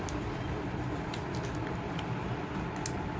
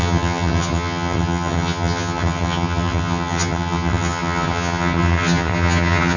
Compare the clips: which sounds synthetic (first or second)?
second